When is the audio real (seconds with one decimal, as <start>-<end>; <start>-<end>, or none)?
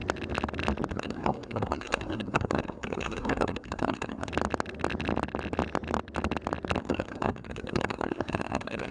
0.0-0.9; 4.3-6.8